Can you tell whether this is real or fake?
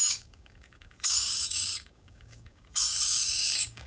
fake